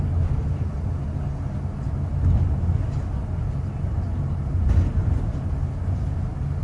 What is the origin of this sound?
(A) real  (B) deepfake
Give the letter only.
A